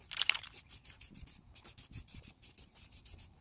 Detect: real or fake fake